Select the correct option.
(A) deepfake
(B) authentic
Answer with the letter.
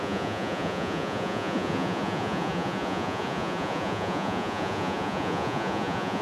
A